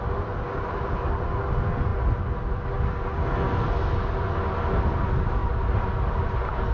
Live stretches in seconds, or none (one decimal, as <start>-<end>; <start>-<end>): 0.0-6.7